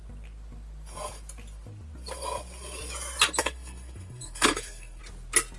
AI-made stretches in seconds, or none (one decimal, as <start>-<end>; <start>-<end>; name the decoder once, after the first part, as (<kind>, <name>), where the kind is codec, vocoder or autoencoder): 3.4-5.0 (codec, SNAC)